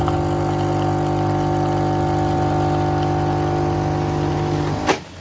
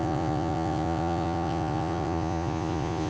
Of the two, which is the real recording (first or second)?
first